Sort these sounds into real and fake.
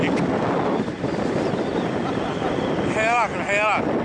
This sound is real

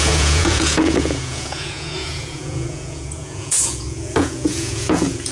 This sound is fake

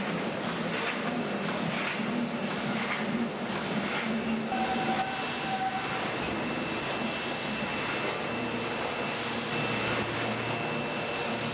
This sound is real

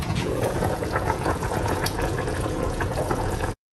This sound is fake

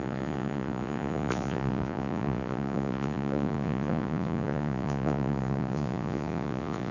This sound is fake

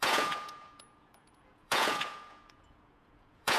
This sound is fake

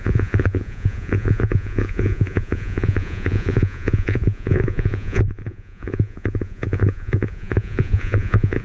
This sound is fake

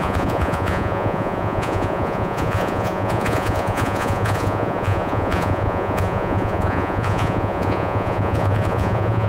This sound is fake